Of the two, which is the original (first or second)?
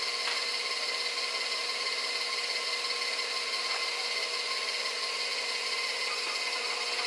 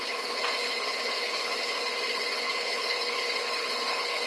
first